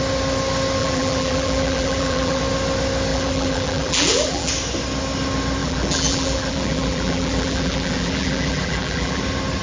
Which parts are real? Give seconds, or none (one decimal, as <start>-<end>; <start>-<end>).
0.0-0.8; 2.4-3.1; 4.5-5.6; 9.2-9.6